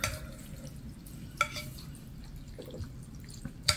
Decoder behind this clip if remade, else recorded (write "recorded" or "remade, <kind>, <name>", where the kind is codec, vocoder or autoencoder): recorded